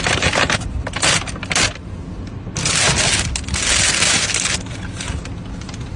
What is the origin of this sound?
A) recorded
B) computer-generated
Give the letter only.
A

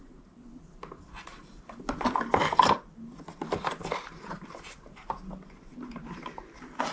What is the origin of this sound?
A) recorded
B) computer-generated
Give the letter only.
A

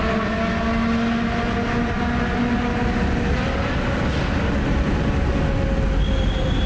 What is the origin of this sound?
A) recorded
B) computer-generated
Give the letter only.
A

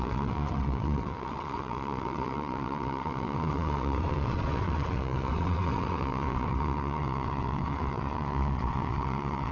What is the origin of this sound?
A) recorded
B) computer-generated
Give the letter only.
B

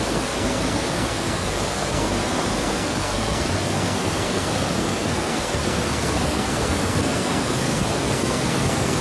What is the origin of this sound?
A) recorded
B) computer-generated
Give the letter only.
B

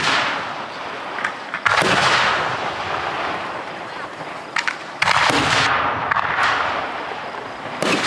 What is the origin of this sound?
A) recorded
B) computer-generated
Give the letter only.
A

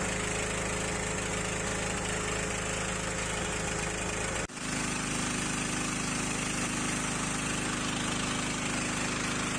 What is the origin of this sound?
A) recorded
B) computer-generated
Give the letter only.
A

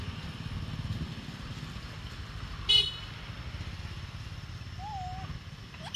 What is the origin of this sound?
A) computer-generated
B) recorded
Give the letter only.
B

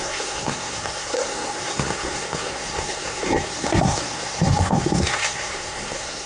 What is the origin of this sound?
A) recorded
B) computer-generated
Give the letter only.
B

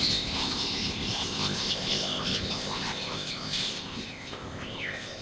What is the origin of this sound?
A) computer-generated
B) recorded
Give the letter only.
A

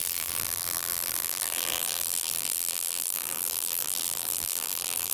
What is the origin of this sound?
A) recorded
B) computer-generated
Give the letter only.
B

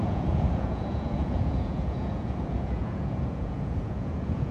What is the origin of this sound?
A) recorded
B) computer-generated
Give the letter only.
B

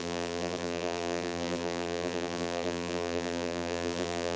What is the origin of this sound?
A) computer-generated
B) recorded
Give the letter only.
A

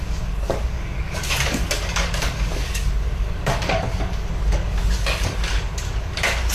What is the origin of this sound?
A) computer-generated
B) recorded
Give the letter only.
A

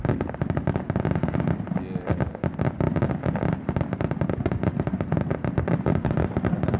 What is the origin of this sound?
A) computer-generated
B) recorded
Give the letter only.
B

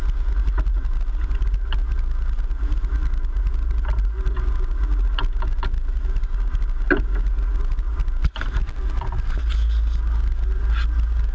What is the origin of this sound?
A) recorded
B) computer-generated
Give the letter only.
A